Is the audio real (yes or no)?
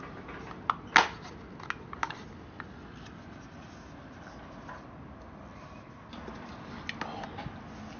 yes